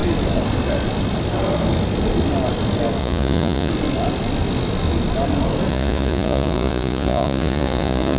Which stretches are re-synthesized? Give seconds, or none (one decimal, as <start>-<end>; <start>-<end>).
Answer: 3.0-3.7; 5.7-8.2